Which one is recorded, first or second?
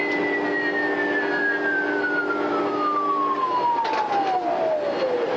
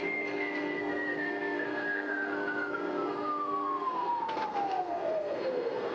first